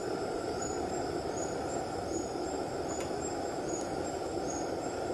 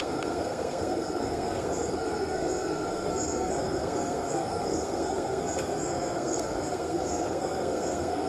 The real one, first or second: first